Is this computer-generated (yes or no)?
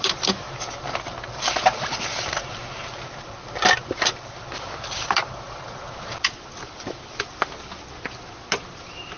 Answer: no